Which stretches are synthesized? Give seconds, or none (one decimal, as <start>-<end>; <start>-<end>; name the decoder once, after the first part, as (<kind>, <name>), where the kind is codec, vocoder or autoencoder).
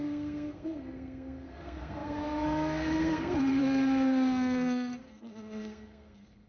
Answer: 0.0-6.5 (codec, SNAC)